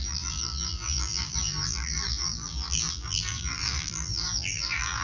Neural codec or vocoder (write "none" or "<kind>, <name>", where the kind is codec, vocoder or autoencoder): vocoder, BigVGAN v2